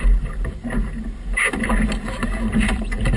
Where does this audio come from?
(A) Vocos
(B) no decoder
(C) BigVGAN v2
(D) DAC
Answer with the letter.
B